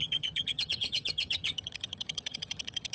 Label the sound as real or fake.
fake